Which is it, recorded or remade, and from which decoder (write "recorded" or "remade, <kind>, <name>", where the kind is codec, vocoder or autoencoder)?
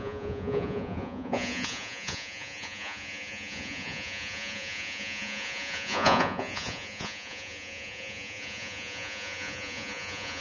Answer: remade, vocoder, Vocos